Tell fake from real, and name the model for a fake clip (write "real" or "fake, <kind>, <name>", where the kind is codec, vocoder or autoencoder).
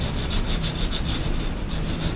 real